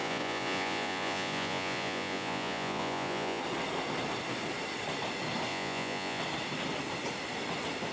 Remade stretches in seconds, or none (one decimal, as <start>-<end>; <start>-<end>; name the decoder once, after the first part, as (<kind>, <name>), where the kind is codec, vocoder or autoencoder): 0.0-3.4 (vocoder, Vocos); 5.5-6.2